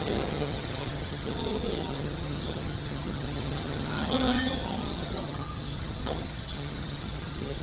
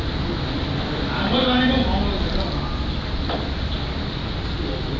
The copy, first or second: first